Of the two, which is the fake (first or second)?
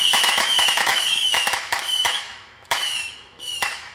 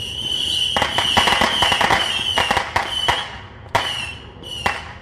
first